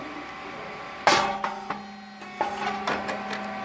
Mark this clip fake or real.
real